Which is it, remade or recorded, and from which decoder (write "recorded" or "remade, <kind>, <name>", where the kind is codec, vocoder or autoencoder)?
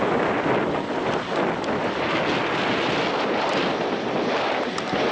recorded